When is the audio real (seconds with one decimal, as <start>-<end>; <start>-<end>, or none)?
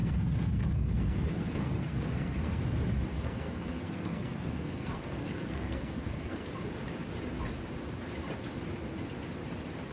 2.6-3.1; 6.5-9.9